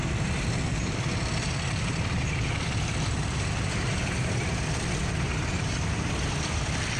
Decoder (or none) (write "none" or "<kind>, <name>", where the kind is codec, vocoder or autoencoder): vocoder, BigVGAN v2